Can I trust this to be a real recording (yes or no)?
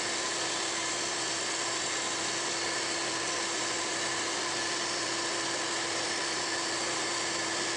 yes